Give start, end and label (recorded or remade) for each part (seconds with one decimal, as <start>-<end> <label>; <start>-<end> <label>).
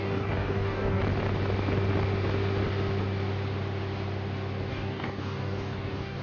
0.0-1.0 remade; 1.0-4.7 recorded; 4.7-6.2 remade